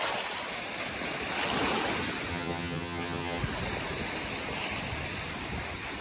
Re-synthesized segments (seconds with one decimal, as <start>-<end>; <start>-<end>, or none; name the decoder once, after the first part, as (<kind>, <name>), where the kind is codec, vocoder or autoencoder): 2.3-3.4 (vocoder, HiFi-GAN)